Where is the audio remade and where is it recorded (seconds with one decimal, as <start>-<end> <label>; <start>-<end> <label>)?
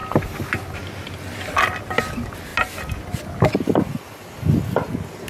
0.0-5.3 recorded